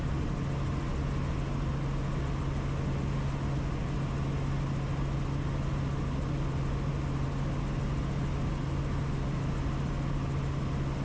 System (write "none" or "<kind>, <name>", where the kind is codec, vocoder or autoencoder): none